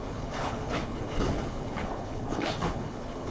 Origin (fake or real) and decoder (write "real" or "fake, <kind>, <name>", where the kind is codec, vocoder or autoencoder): fake, codec, HILCodec